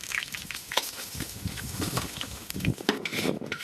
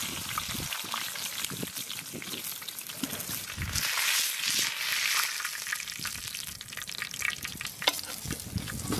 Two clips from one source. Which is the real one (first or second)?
second